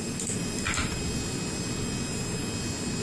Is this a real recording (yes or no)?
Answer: yes